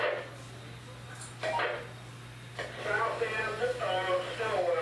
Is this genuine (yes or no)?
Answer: yes